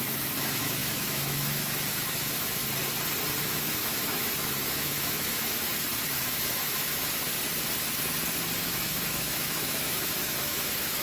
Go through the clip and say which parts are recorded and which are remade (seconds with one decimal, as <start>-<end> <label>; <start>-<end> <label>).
0.0-2.6 remade; 2.6-3.4 recorded; 3.4-5.7 remade; 5.7-6.2 recorded; 6.2-7.3 remade; 7.3-8.6 recorded; 8.6-11.0 remade